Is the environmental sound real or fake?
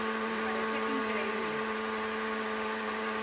fake